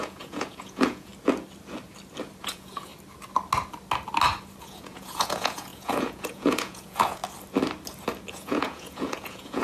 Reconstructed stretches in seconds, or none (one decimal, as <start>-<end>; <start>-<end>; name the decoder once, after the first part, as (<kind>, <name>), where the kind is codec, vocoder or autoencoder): 0.0-1.1 (vocoder, Vocos); 2.4-2.9; 4.6-7.2; 8.3-9.6